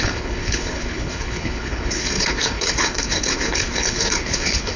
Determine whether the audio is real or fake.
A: fake